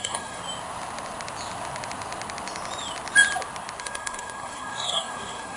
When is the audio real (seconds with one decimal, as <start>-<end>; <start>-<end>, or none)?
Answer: 0.4-3.8